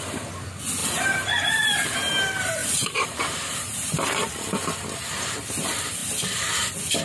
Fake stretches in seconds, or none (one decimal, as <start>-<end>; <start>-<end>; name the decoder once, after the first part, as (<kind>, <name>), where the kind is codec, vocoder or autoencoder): 0.8-1.7 (vocoder, BigVGAN v2); 2.6-4.3